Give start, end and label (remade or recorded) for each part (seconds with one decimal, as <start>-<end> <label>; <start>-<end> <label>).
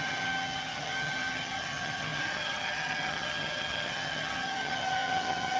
0.0-5.6 remade